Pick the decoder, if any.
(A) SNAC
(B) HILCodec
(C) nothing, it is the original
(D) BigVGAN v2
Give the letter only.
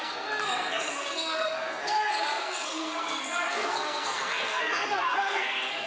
A